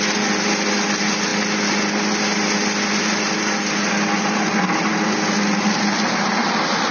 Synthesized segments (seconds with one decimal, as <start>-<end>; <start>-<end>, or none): none